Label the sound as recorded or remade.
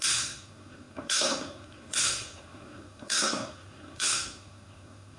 remade